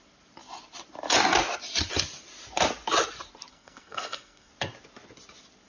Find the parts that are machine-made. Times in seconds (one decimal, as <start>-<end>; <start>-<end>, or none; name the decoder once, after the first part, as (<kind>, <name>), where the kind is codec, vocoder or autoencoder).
3.5-4.5 (codec, SNAC)